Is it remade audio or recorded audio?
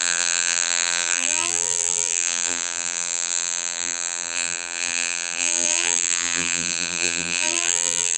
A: remade